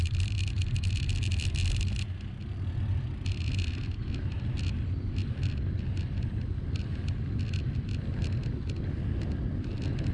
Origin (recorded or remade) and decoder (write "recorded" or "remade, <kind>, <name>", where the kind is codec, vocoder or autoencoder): recorded